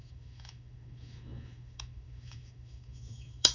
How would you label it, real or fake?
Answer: fake